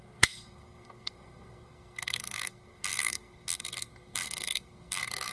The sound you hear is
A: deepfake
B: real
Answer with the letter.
A